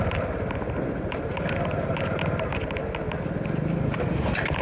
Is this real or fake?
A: real